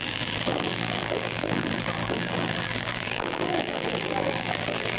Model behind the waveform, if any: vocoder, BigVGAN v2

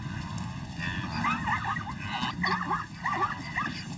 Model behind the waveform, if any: none